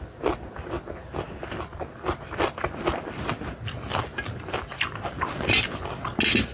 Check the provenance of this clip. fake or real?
real